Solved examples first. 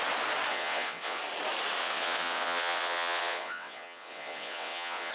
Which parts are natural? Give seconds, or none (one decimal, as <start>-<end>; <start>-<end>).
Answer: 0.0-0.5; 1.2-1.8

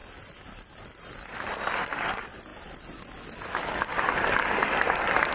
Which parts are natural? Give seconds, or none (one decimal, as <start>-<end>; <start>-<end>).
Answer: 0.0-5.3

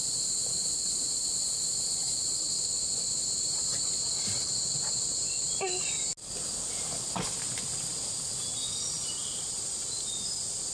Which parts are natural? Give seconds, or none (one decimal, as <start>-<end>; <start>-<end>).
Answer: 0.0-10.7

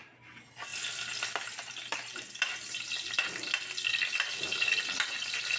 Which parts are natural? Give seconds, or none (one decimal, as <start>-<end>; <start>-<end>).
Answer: 0.0-5.6

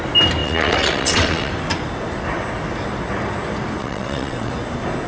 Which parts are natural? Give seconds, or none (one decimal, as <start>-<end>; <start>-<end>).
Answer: 0.0-0.4; 1.5-3.8; 4.5-5.1